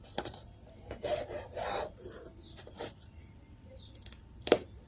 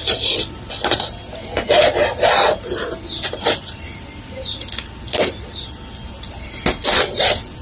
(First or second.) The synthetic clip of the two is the first